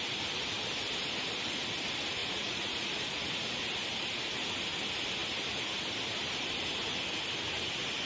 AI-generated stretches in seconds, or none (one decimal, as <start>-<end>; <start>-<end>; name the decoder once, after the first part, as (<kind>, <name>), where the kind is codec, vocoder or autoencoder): 2.2-3.0 (vocoder, Vocos)